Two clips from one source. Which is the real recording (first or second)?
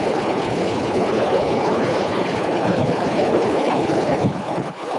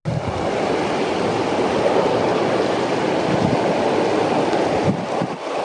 second